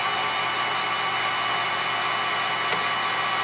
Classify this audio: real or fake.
real